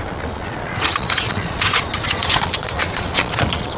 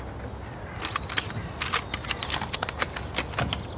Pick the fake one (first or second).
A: first